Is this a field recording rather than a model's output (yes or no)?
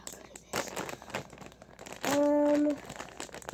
yes